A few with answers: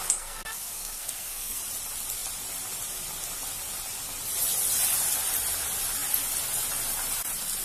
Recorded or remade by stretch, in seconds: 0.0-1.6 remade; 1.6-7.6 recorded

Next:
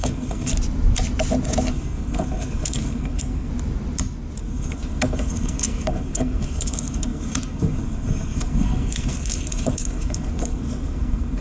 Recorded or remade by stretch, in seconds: 0.0-0.5 remade; 0.5-1.7 recorded; 1.7-3.5 remade; 3.5-4.4 recorded; 4.4-11.4 remade

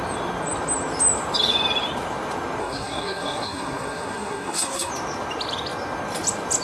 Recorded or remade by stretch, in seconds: 0.0-2.6 recorded; 2.6-4.9 remade; 4.9-6.6 recorded

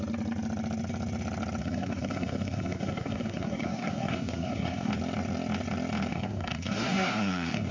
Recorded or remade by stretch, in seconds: 0.0-1.6 recorded; 1.6-4.9 remade; 4.9-6.1 recorded; 6.1-7.7 remade

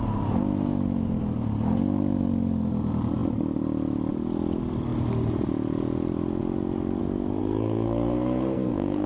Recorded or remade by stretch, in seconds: 0.0-7.4 recorded; 7.4-9.1 remade

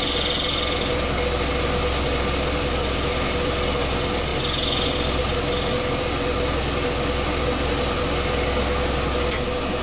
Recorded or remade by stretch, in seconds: 0.0-9.8 recorded